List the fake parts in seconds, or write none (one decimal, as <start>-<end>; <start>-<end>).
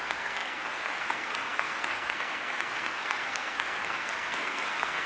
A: 0.0-5.1